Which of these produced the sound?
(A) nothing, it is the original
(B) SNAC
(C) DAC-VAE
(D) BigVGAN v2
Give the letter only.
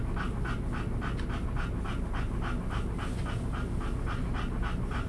A